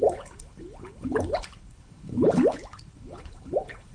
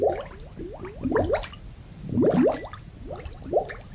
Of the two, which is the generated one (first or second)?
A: first